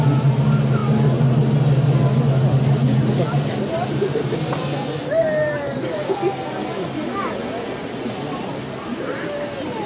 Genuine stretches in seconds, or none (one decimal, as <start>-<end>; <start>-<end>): 0.0-9.9